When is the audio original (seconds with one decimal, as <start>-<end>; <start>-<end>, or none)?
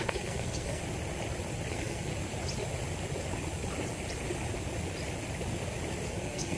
0.8-1.7; 2.1-6.1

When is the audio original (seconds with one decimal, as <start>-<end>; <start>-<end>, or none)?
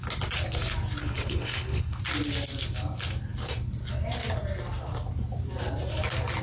0.0-1.0; 2.0-6.4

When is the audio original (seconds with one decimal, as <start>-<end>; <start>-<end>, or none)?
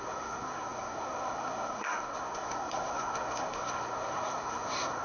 none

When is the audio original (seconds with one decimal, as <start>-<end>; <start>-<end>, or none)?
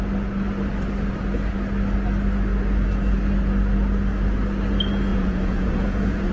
0.0-5.1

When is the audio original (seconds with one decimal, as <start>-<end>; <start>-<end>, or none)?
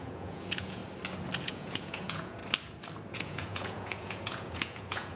0.8-1.4; 2.4-3.1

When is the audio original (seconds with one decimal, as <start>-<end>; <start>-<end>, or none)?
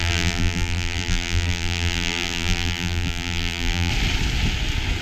3.9-5.0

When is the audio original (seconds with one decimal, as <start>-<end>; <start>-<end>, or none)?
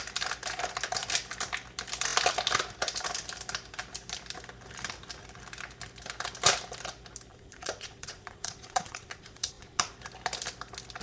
0.0-7.3; 9.9-11.0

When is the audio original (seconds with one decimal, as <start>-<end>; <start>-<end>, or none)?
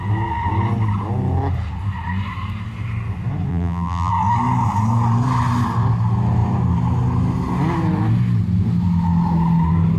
0.0-3.5; 4.1-10.0